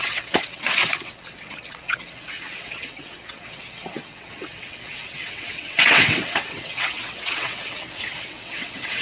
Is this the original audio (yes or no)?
no